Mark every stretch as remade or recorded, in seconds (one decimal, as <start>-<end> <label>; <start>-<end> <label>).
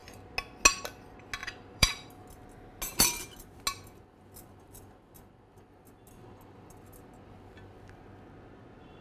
0.0-1.4 recorded; 1.4-2.1 remade; 2.1-9.0 recorded